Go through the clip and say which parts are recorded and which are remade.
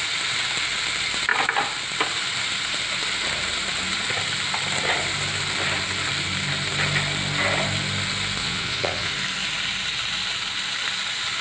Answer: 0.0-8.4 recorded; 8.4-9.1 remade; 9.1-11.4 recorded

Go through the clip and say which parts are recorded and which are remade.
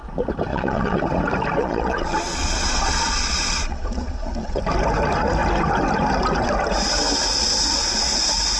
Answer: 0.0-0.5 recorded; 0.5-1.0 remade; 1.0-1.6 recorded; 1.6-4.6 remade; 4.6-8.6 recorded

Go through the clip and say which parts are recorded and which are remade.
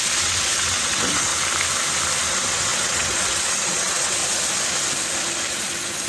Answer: 0.0-1.3 remade; 1.3-2.3 recorded; 2.3-4.2 remade; 4.2-5.5 recorded; 5.5-6.1 remade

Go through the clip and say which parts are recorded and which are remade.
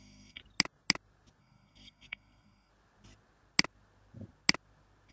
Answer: 0.0-0.4 remade; 0.4-1.4 recorded; 1.4-2.7 remade; 2.7-5.1 recorded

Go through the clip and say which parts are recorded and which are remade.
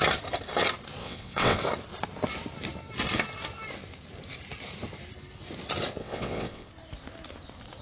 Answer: 0.0-1.0 recorded; 1.0-1.6 remade; 1.6-6.0 recorded; 6.0-6.7 remade; 6.7-7.8 recorded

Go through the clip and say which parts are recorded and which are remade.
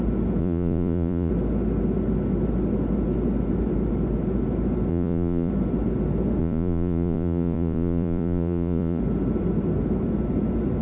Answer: 0.0-0.4 recorded; 0.4-1.3 remade; 1.3-4.9 recorded; 4.9-5.5 remade; 5.5-6.4 recorded; 6.4-9.0 remade; 9.0-10.8 recorded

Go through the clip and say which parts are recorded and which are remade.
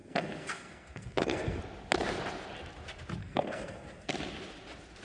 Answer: 0.0-1.6 remade; 1.6-3.2 recorded; 3.2-4.1 remade; 4.1-5.0 recorded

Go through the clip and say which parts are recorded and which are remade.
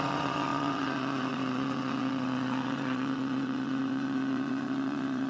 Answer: 0.0-5.3 remade